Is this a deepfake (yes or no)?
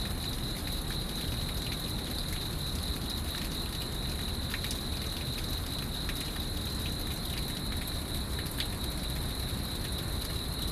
no